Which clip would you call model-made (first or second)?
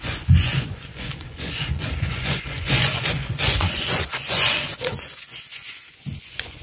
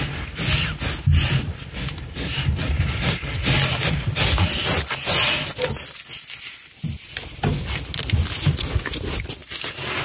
first